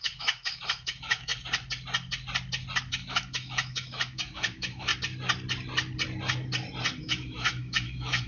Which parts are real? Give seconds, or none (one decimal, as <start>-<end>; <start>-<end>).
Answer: 1.3-2.9; 4.9-7.0